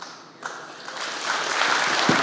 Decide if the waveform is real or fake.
real